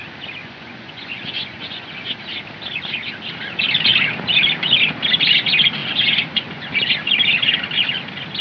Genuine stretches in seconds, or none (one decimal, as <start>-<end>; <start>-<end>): 0.0-0.4; 2.1-5.8; 6.7-8.4